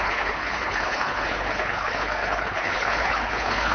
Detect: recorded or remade remade